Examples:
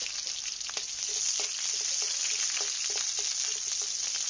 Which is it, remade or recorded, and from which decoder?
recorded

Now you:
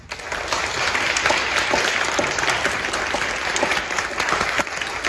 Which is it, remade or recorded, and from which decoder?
recorded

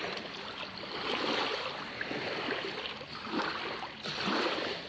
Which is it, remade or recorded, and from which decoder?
recorded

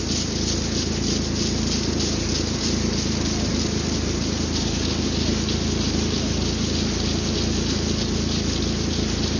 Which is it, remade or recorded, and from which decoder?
recorded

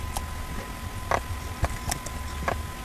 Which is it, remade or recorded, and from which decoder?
recorded